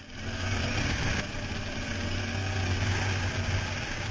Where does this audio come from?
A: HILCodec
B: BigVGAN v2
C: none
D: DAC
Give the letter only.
C